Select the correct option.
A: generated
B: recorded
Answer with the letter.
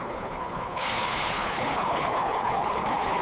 A